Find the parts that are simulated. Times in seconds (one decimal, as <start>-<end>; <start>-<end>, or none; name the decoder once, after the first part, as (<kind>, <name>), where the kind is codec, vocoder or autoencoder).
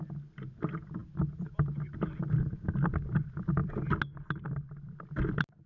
none